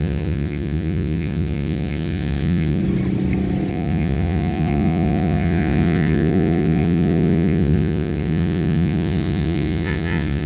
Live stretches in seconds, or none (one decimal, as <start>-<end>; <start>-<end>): 2.8-3.7